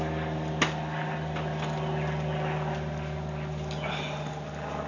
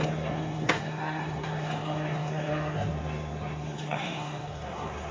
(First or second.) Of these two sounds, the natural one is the first